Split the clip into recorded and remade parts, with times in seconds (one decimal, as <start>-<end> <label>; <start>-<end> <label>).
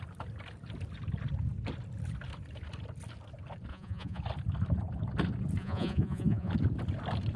0.0-3.7 recorded; 3.7-4.2 remade; 4.2-5.6 recorded; 5.6-6.5 remade; 6.5-7.4 recorded